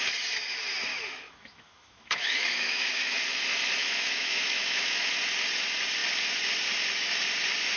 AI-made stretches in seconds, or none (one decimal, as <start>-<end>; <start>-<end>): 0.9-3.2; 3.8-5.2